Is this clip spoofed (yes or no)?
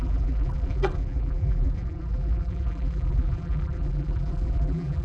yes